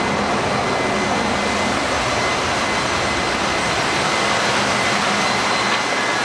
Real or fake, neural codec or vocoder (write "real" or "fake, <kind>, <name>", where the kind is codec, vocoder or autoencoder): real